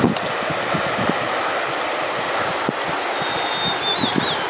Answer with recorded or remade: recorded